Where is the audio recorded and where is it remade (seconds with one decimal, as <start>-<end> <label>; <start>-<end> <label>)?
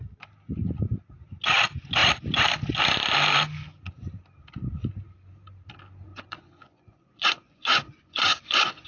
0.0-6.1 recorded; 6.1-8.9 remade